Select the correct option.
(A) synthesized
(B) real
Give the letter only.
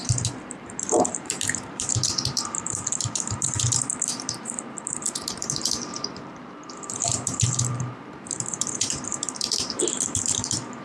A